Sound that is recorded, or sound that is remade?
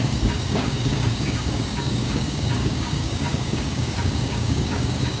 remade